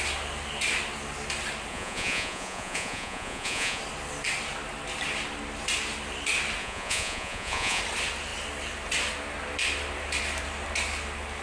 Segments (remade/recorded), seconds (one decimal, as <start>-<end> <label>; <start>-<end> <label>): 0.0-1.7 recorded; 1.7-3.8 remade; 3.8-6.6 recorded; 6.6-7.8 remade; 7.8-11.4 recorded